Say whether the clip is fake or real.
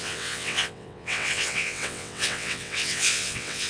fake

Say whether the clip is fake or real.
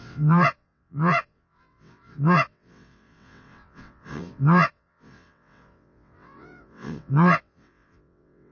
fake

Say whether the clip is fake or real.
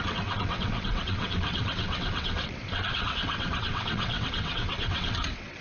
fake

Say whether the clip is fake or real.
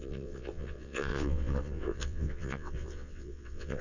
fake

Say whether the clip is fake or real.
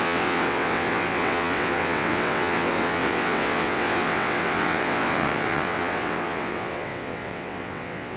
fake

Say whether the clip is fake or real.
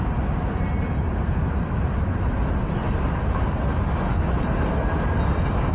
real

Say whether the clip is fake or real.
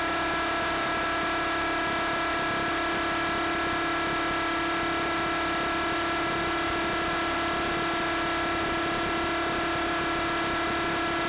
real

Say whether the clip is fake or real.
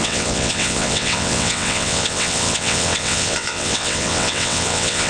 fake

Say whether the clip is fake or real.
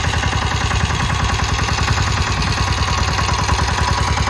real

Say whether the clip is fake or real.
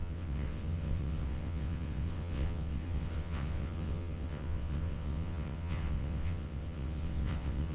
fake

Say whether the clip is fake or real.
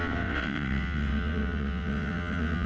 fake